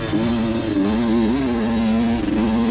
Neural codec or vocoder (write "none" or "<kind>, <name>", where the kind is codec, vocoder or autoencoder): none